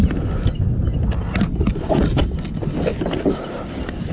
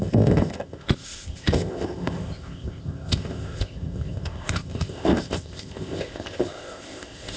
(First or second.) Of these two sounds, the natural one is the first